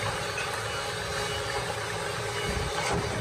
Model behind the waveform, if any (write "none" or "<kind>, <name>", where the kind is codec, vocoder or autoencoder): none